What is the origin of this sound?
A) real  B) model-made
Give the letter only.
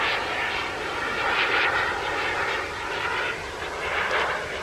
A